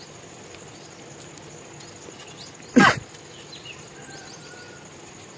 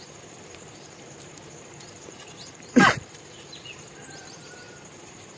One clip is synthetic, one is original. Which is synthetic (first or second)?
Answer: second